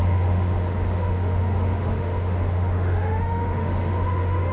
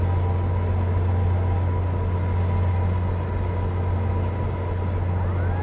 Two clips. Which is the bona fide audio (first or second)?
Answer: second